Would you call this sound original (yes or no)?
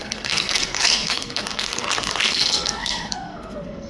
no